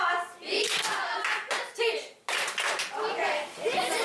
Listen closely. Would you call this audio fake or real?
real